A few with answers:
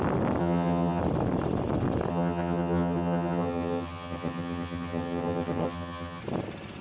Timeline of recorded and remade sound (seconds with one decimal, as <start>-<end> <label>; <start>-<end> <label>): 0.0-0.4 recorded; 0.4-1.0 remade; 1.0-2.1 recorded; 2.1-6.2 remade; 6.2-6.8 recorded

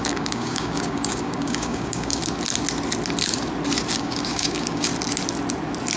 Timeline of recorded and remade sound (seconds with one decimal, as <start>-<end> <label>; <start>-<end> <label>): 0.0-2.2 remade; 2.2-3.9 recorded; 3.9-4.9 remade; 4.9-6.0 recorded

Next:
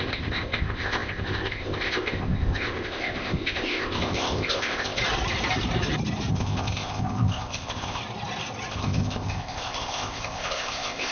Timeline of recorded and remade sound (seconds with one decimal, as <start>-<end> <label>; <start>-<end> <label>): 0.0-5.0 remade; 5.0-6.3 recorded; 6.3-8.0 remade; 8.0-8.7 recorded; 8.7-11.1 remade